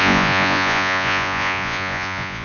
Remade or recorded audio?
remade